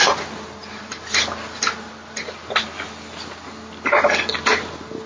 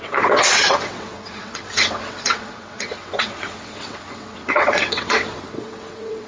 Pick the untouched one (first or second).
first